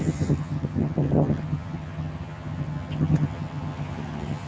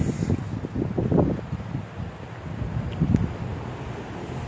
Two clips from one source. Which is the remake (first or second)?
first